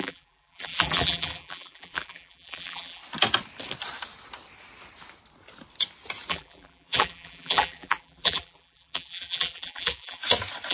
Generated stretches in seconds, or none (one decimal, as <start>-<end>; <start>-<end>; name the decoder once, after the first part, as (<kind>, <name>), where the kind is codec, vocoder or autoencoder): 0.0-3.0 (vocoder, BigVGAN v2); 6.3-10.2